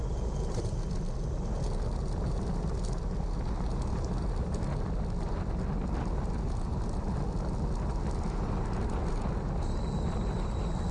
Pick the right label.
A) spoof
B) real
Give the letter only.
B